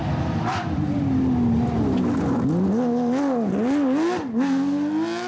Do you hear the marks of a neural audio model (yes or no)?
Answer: no